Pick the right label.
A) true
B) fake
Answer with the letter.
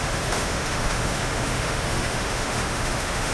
B